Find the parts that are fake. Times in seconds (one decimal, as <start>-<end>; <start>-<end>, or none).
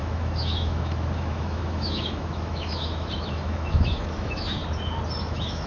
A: 0.0-4.6; 5.2-5.7